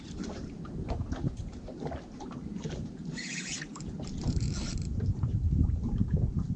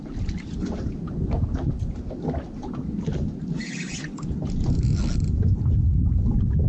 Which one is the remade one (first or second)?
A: first